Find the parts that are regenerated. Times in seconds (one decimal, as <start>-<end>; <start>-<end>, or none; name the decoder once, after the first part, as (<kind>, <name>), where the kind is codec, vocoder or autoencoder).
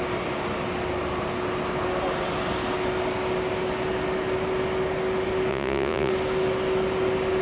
5.5-6.1 (vocoder, Vocos)